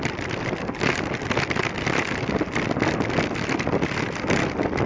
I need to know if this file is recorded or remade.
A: remade